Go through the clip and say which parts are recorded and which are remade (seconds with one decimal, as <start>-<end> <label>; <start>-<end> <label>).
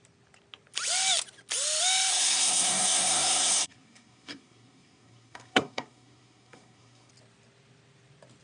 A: 0.0-2.1 recorded; 2.1-7.1 remade; 7.1-8.4 recorded